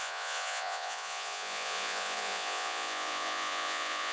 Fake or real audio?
fake